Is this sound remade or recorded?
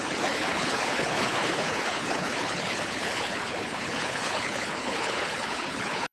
remade